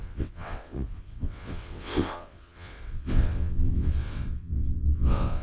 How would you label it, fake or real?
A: fake